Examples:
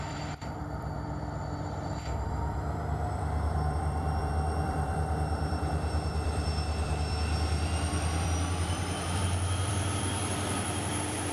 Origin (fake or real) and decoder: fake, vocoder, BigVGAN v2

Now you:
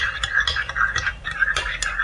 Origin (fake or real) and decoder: real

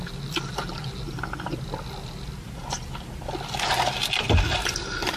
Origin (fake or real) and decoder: real